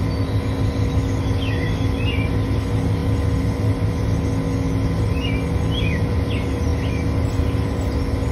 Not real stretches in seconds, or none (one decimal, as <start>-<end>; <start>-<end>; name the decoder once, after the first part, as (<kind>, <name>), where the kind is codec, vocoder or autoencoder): none